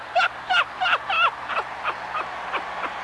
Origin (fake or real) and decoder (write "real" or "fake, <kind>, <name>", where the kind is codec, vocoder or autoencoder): real